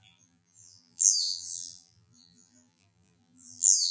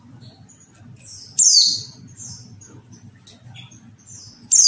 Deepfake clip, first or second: first